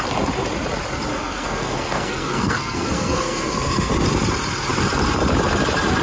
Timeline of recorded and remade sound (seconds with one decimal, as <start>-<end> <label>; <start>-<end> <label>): 0.0-1.1 recorded; 1.1-3.9 remade; 3.9-6.0 recorded